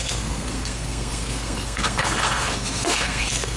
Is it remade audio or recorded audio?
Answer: remade